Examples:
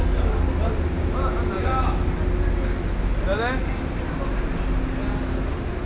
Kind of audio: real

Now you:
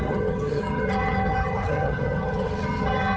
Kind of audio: fake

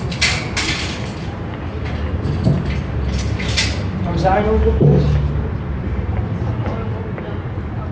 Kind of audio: real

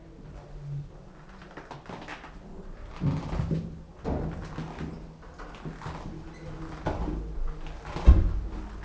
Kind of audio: real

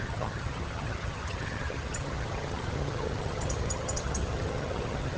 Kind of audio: fake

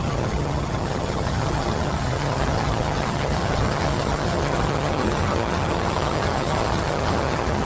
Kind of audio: fake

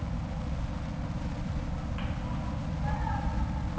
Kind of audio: real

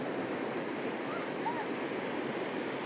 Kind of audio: real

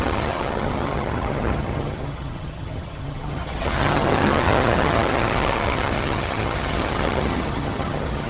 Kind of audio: fake